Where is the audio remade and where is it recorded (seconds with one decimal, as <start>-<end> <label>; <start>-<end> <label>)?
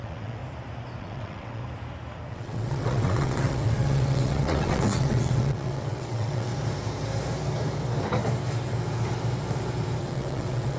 0.0-0.4 remade; 0.4-1.0 recorded; 1.0-1.6 remade; 1.6-2.3 recorded; 2.3-6.5 remade; 6.5-10.0 recorded; 10.0-10.8 remade